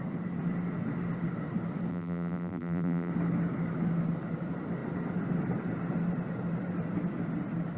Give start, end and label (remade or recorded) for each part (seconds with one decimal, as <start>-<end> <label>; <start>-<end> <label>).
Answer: 0.0-1.9 recorded; 1.9-3.1 remade; 3.1-7.8 recorded